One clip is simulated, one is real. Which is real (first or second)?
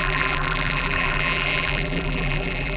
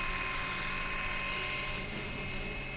second